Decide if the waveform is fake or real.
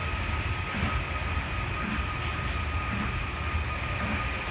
real